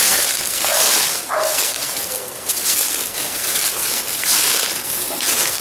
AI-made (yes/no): yes